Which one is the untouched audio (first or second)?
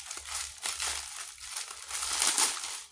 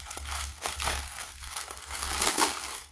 first